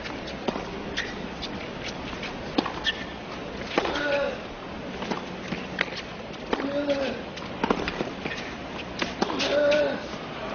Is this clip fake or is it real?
real